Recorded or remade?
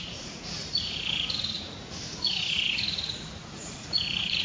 remade